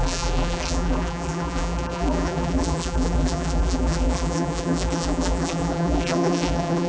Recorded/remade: remade